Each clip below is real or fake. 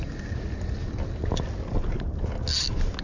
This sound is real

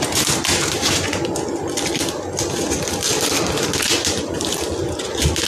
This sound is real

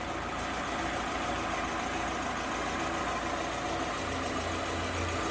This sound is real